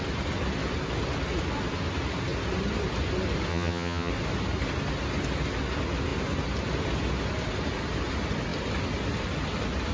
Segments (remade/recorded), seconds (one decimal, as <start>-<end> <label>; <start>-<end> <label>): 0.0-3.5 recorded; 3.5-4.1 remade; 4.1-9.9 recorded